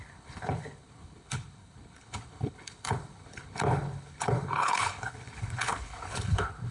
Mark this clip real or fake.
fake